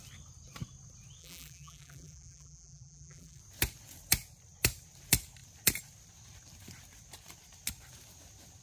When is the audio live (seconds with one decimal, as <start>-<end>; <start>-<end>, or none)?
0.0-1.2; 3.4-8.6